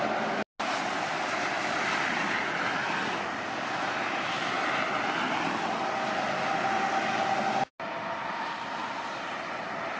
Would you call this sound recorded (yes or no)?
yes